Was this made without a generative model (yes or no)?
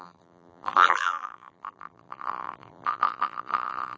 no